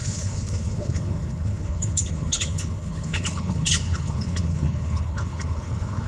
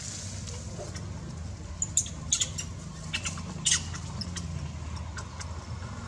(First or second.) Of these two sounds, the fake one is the first